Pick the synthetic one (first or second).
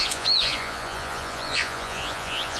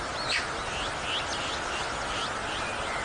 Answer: first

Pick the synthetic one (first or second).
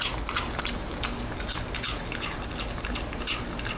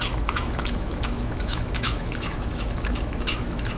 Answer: second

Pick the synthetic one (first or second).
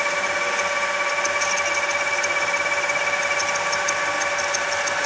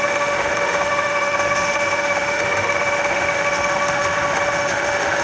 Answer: second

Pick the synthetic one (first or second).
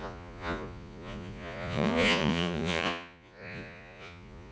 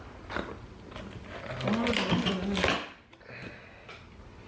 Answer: first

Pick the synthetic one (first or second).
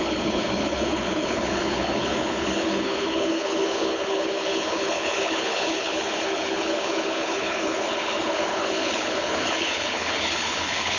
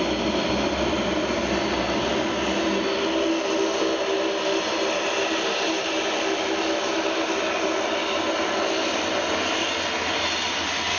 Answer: first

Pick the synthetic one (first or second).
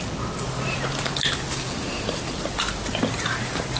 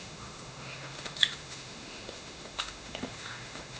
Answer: second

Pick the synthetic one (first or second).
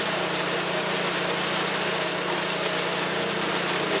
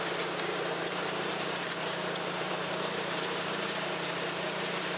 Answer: second